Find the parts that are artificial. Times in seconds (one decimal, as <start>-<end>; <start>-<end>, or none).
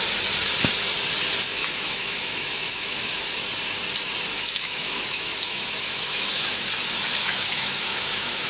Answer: 1.6-3.3; 4.3-6.7; 7.2-8.5